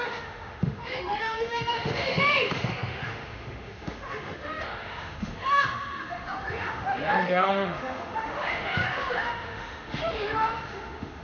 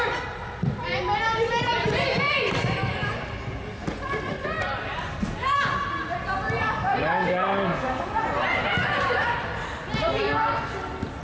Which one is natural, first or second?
second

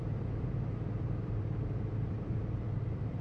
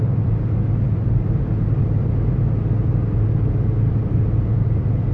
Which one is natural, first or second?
second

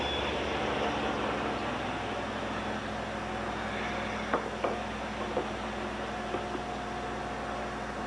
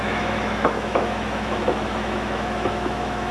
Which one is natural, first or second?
first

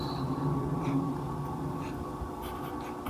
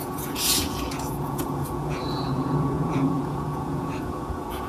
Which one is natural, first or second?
first